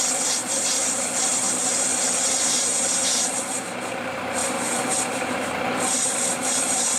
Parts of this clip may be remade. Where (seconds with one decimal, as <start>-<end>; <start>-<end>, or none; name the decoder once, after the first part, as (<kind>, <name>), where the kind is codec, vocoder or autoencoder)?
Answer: 0.0-7.0 (vocoder, BigVGAN v2)